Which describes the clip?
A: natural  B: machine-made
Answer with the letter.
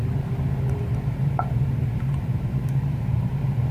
B